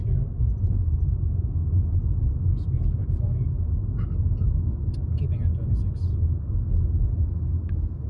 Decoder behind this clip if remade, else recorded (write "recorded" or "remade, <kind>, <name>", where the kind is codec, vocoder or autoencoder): recorded